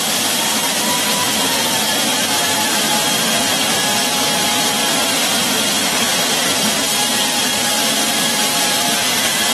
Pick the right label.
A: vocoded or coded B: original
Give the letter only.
A